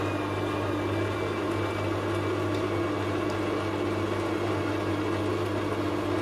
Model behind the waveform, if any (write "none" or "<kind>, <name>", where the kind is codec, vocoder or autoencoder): none